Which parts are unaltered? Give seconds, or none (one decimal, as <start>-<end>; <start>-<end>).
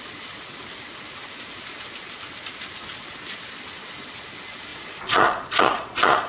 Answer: 0.0-4.7